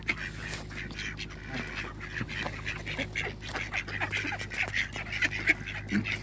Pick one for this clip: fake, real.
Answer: real